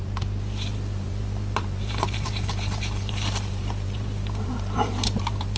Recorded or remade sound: remade